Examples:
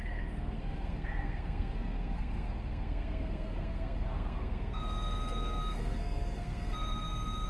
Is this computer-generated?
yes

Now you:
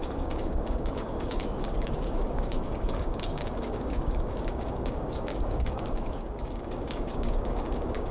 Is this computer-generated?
yes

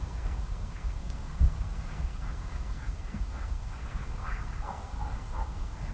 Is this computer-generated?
yes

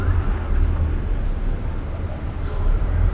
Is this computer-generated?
no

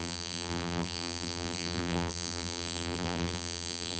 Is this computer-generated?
yes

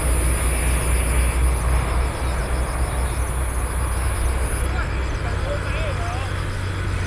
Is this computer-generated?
no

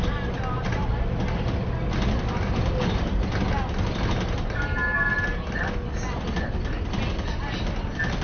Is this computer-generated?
no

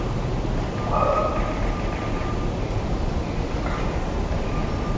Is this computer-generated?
no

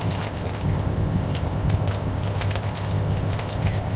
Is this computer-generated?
yes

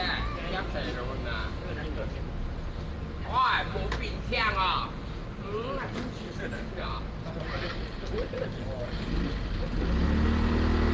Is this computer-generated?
no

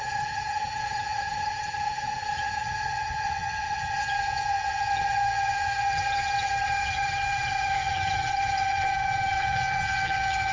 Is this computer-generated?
yes